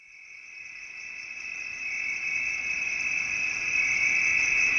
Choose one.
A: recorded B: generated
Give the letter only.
A